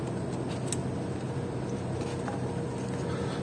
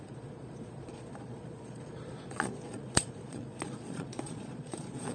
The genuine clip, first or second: first